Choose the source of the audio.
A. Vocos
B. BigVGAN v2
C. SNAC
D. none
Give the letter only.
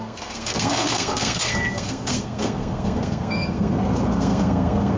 C